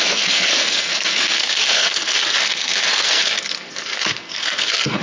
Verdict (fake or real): fake